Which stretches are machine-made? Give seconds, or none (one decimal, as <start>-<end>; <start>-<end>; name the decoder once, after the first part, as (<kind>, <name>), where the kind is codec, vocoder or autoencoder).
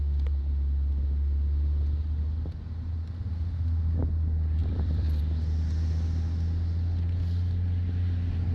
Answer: 4.6-5.2 (vocoder, BigVGAN v2)